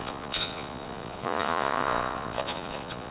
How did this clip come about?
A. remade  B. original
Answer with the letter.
A